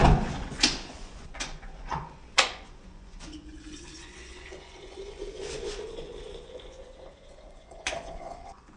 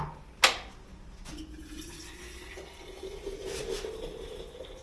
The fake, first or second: first